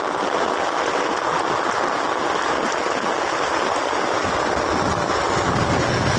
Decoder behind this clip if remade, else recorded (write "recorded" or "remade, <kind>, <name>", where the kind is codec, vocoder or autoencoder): recorded